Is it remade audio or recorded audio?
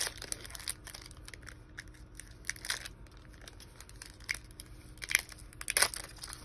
recorded